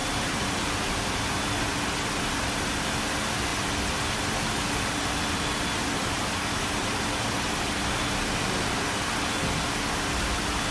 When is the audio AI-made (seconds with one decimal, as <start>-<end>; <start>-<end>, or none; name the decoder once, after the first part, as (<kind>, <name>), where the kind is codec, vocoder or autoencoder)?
none

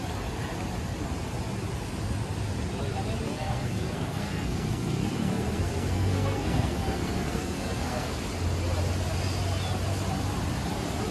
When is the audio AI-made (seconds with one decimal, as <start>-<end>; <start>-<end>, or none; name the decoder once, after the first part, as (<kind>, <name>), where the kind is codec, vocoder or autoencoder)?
3.3-8.2 (codec, SNAC)

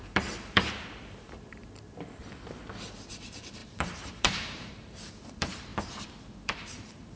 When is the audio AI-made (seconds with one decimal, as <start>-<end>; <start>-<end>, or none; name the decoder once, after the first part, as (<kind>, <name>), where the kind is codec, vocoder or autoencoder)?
0.0-1.6 (vocoder, BigVGAN v2); 3.1-5.7; 6.4-7.2

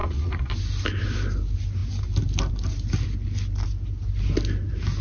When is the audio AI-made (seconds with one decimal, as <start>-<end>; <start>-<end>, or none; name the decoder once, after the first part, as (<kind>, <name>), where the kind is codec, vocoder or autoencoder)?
0.0-0.5 (vocoder, Vocos)

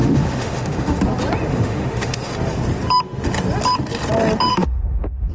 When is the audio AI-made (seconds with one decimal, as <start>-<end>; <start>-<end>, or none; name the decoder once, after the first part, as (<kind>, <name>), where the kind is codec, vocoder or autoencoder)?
0.0-1.0 (autoencoder, DAC-VAE); 1.5-2.3; 4.5-5.3